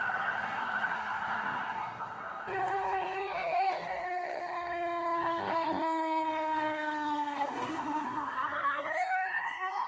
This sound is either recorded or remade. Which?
remade